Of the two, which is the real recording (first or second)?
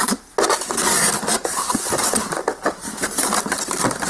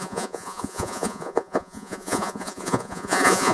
first